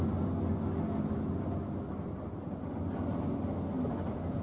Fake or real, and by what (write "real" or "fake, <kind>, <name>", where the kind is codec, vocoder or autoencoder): real